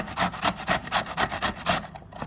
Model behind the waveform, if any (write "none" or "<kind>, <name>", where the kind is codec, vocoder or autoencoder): none